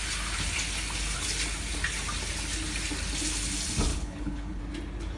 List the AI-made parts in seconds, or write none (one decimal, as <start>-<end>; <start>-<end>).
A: 3.9-4.6